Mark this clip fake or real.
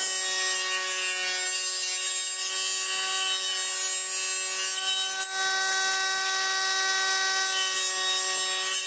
real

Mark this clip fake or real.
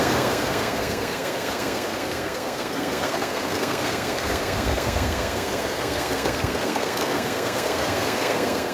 fake